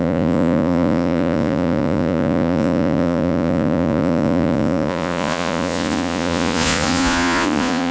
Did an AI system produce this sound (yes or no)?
yes